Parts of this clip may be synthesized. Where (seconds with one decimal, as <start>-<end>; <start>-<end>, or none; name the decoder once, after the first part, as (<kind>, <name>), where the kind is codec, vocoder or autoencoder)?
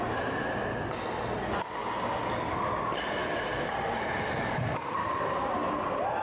none